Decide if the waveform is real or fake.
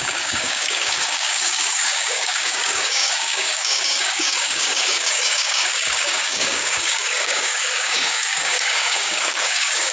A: fake